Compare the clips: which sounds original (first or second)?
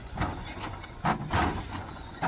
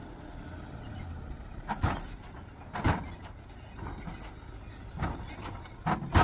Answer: second